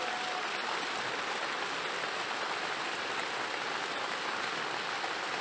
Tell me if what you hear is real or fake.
real